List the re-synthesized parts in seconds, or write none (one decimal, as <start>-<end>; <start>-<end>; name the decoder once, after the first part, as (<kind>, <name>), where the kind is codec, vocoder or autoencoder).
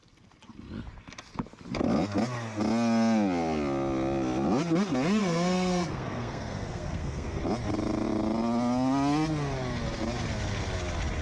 5.2-7.4 (codec, SNAC)